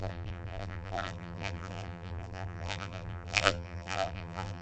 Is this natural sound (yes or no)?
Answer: no